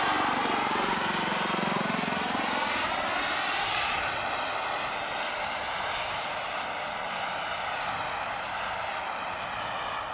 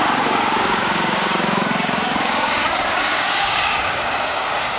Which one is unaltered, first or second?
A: first